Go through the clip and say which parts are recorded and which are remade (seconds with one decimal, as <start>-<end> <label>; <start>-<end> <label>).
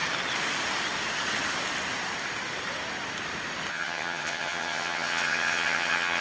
0.0-3.7 recorded; 3.7-6.2 remade